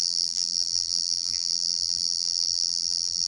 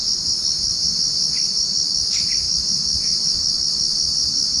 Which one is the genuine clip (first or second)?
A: second